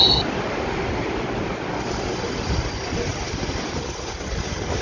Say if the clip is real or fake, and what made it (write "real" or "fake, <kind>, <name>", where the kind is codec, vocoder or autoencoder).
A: real